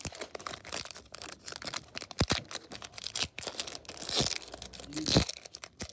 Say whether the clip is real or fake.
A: real